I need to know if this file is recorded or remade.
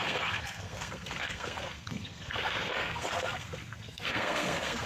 remade